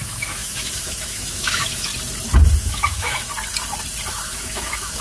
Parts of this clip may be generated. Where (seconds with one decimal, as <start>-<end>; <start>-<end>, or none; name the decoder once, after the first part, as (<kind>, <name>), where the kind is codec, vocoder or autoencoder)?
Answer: 0.0-1.9 (autoencoder, DAC-VAE); 2.6-3.3; 4.1-5.0